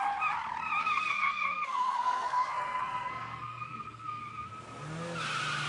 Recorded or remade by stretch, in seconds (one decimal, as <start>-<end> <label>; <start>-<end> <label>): 0.0-0.8 recorded; 0.8-4.2 remade; 4.2-5.7 recorded

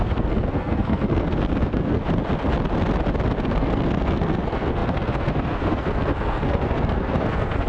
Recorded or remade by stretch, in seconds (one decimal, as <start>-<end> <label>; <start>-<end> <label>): 0.0-2.0 remade; 2.0-3.4 recorded; 3.4-7.7 remade

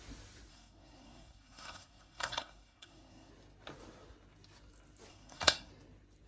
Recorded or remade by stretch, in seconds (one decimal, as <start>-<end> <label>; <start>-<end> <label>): 0.0-0.5 recorded; 0.5-3.3 remade; 3.3-5.1 recorded; 5.1-5.7 remade; 5.7-6.3 recorded

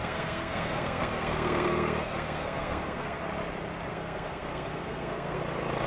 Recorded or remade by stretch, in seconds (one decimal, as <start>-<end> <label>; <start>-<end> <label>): 0.0-3.2 remade; 3.2-3.9 recorded; 3.9-5.4 remade; 5.4-5.9 recorded